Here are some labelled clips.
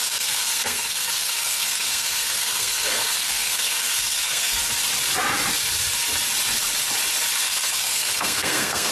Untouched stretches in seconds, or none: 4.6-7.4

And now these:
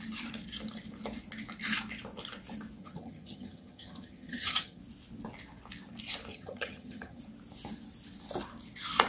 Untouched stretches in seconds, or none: 0.0-2.8; 4.8-6.3; 7.2-9.1

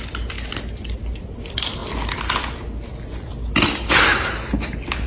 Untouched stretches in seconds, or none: 0.0-5.1

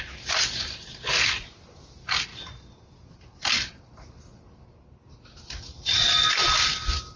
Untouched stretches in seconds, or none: 0.0-7.2